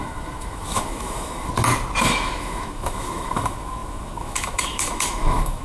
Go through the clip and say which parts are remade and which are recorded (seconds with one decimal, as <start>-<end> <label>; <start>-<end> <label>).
0.0-1.5 remade; 1.5-2.0 recorded; 2.0-5.6 remade